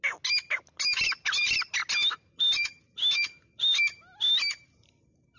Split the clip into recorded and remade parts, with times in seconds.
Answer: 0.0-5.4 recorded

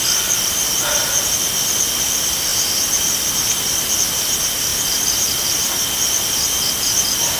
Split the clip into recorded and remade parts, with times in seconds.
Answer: 0.0-2.5 recorded; 2.5-4.1 remade; 4.1-7.4 recorded

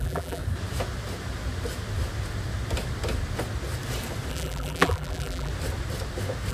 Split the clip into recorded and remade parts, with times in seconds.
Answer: 0.0-0.4 remade; 0.4-4.3 recorded; 4.3-5.5 remade; 5.5-6.5 recorded

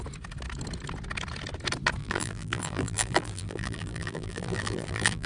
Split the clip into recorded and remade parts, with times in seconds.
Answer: 0.0-2.0 recorded; 2.0-5.3 remade

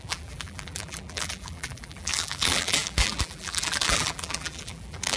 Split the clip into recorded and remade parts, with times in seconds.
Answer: 0.0-5.2 remade

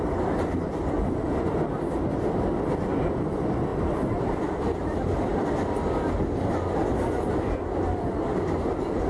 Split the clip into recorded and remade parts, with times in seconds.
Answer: 0.0-3.7 recorded; 3.7-4.4 remade; 4.4-9.1 recorded

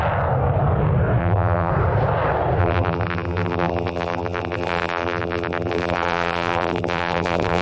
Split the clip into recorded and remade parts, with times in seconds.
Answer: 0.0-1.2 recorded; 1.2-1.7 remade; 1.7-2.6 recorded; 2.6-7.6 remade